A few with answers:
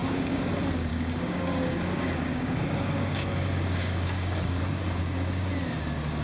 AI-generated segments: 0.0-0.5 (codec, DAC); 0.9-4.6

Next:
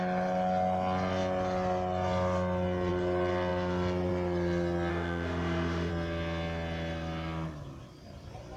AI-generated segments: 4.9-5.9 (autoencoder, DAC-VAE)

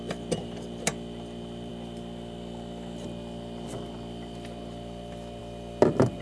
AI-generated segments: none